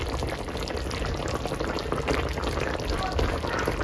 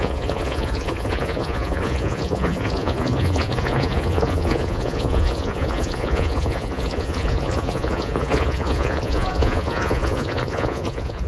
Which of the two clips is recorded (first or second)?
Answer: first